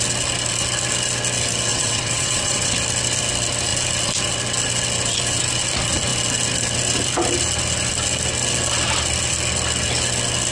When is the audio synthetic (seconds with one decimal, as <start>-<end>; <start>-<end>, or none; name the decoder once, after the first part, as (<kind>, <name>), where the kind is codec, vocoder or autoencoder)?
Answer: 1.7-2.7 (vocoder, WaveNeXt)